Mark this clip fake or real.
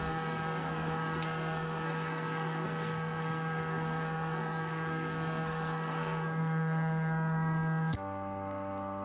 fake